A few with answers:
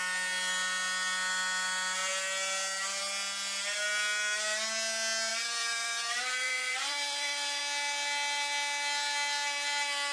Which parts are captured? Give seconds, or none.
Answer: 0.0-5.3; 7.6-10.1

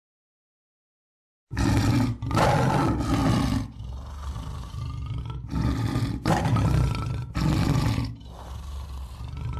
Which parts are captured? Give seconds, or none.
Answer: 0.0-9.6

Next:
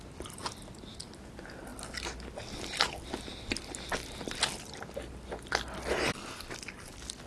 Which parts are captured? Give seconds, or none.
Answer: 0.0-7.3

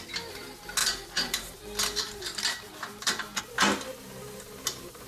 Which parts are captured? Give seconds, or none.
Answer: 0.0-0.8; 3.4-5.1

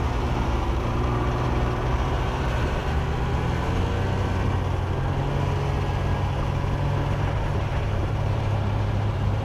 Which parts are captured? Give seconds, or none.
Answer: 2.8-7.5

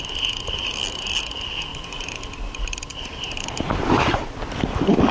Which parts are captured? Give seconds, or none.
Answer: 0.0-1.7; 2.2-2.9; 4.5-5.1

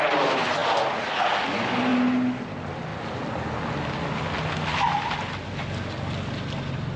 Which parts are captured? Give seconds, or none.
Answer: 0.0-7.0